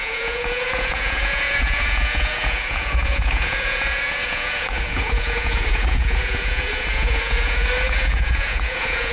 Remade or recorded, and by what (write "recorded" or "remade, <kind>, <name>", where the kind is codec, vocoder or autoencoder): remade, vocoder, Vocos